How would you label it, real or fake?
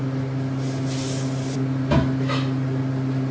real